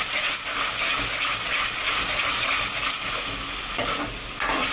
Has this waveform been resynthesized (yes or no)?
no